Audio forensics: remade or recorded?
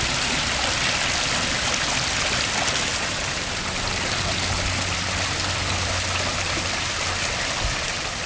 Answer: recorded